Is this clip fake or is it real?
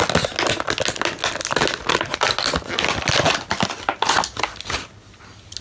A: real